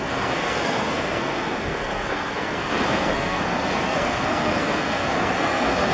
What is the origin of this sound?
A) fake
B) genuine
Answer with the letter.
A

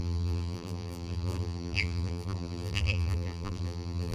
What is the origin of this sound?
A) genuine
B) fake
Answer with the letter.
B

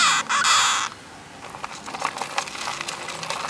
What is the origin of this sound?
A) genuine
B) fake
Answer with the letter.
A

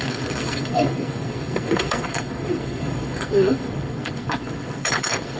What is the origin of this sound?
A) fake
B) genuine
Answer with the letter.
A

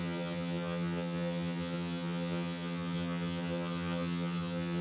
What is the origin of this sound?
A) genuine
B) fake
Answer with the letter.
B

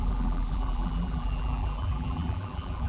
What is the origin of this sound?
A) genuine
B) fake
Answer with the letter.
B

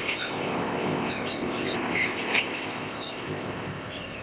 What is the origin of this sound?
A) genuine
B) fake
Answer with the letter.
B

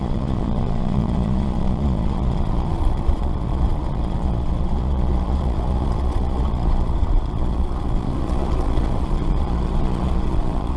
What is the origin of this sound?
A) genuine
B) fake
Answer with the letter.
B